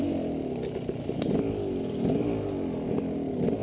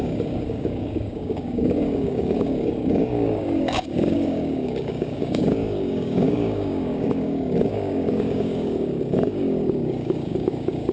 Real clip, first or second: first